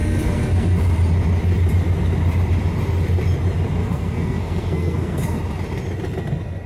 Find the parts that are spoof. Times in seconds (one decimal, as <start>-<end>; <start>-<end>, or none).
0.0-1.0; 3.8-5.4